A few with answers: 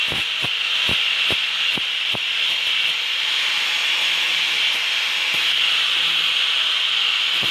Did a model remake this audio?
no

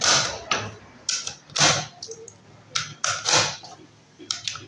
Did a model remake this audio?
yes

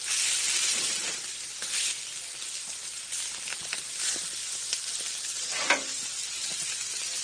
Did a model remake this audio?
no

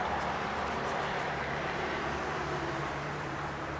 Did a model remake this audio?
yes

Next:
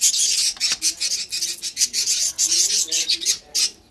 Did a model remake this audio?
no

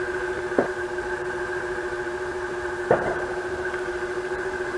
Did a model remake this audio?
yes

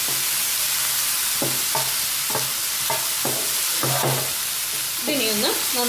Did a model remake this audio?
no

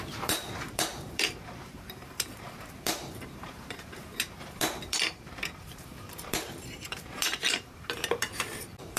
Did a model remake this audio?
yes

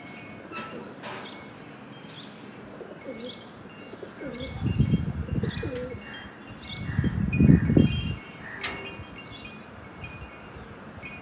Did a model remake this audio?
yes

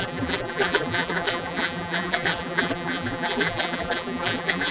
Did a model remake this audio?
yes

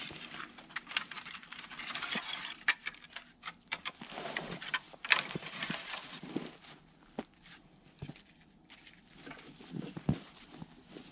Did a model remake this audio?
yes